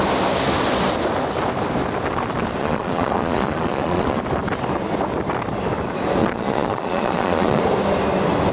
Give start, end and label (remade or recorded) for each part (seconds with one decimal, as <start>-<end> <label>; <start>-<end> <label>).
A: 0.0-2.6 recorded; 2.6-4.2 remade; 4.2-6.2 recorded; 6.2-7.6 remade; 7.6-8.5 recorded